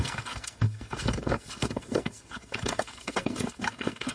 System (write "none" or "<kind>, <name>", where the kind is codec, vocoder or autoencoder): codec, SNAC